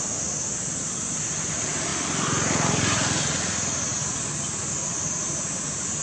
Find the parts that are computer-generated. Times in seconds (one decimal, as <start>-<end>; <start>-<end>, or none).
none